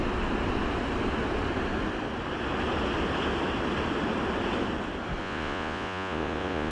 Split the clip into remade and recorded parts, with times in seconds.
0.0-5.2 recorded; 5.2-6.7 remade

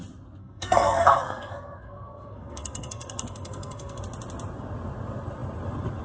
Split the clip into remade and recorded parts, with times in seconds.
0.0-0.4 recorded; 0.4-4.0 remade; 4.0-6.0 recorded

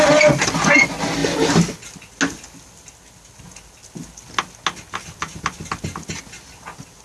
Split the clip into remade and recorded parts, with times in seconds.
0.0-7.0 recorded

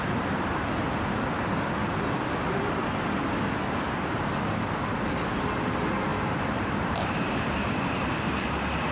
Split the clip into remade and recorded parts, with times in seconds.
0.0-6.1 recorded; 6.1-7.7 remade; 7.7-8.9 recorded

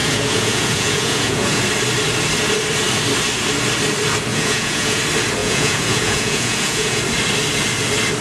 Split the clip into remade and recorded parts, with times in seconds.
0.0-1.6 remade; 1.6-4.3 recorded; 4.3-5.0 remade; 5.0-5.4 recorded; 5.4-7.0 remade; 7.0-8.2 recorded